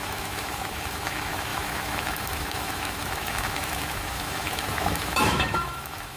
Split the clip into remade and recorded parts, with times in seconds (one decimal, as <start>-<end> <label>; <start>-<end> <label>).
0.0-6.2 remade